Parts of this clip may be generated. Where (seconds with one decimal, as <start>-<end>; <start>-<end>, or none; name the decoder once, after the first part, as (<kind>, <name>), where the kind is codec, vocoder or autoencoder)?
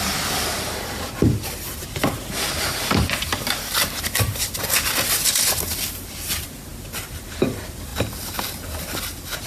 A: 0.0-6.7 (vocoder, BigVGAN v2); 7.2-7.9; 8.8-9.5